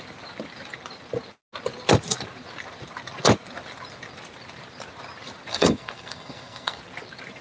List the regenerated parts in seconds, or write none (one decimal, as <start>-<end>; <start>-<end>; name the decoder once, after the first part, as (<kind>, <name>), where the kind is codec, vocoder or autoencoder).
5.5-6.8 (codec, SNAC)